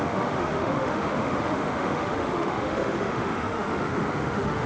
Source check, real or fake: fake